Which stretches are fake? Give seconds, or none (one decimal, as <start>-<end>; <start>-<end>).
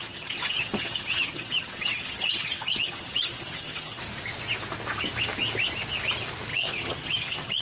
0.0-4.0; 6.5-7.6